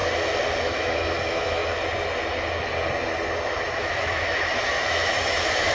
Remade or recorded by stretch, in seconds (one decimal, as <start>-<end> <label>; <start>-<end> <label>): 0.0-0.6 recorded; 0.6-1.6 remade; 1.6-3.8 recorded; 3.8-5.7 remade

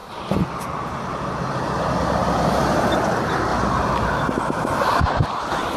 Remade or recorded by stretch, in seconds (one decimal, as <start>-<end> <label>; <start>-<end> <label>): 0.0-5.8 recorded

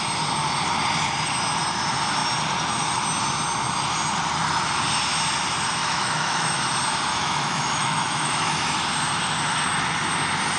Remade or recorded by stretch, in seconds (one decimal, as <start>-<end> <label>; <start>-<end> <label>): 0.0-5.8 recorded; 5.8-6.6 remade; 6.6-7.1 recorded; 7.1-8.7 remade; 8.7-10.6 recorded